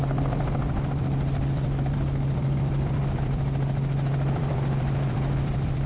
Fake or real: fake